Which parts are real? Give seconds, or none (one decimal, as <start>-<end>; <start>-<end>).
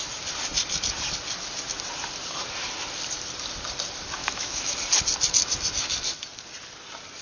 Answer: 0.0-4.2; 4.7-7.2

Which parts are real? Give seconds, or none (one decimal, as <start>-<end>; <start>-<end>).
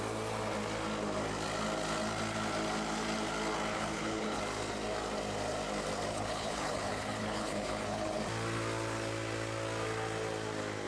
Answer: 0.0-3.7; 4.4-6.1; 8.2-10.9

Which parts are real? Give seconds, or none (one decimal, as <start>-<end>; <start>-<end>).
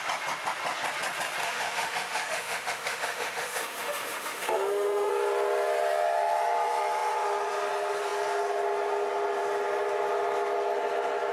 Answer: 0.0-1.4; 5.1-11.3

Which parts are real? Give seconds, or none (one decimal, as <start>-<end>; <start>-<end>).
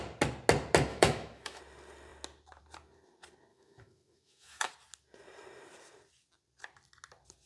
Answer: 0.0-0.9; 1.6-3.5; 4.7-7.5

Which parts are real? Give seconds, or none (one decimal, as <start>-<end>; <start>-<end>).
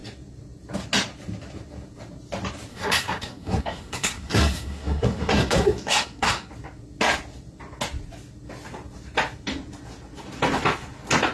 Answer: 0.0-2.7; 6.5-11.3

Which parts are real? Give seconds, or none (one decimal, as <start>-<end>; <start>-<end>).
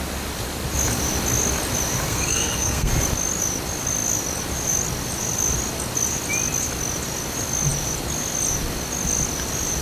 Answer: 0.0-2.1; 2.9-9.8